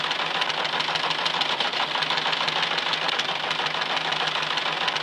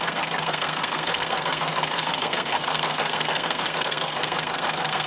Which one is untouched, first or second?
first